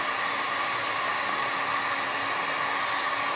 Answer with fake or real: real